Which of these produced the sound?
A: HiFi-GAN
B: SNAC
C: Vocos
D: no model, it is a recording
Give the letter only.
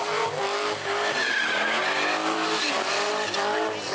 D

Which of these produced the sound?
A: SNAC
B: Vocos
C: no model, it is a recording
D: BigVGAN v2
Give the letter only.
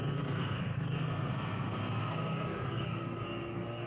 A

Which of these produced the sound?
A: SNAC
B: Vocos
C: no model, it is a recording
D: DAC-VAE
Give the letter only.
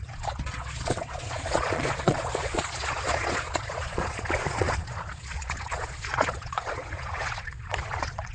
B